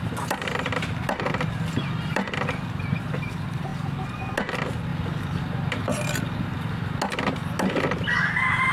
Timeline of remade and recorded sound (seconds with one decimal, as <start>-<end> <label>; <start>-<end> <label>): 0.0-8.7 recorded